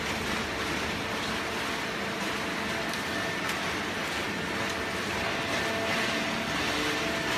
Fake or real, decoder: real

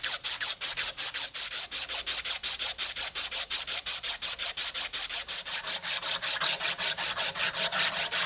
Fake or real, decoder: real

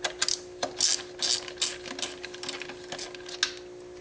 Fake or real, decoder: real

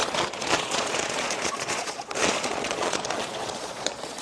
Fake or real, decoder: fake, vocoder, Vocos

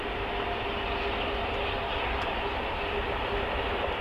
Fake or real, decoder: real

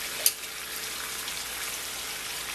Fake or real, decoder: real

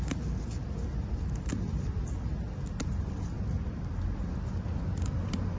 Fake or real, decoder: real